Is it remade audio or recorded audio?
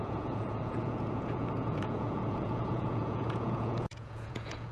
remade